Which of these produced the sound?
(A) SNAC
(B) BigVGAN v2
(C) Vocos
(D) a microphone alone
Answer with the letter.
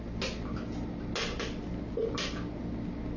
D